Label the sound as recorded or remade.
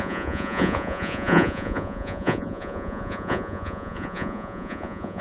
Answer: remade